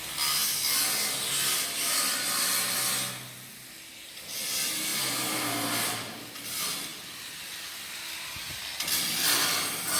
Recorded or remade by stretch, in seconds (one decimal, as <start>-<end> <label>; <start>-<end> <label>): 0.0-4.9 recorded; 4.9-6.3 remade; 6.3-10.0 recorded